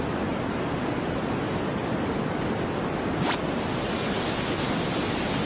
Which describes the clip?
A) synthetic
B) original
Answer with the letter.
B